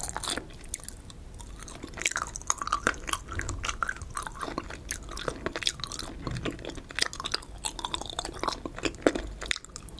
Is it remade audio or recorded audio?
recorded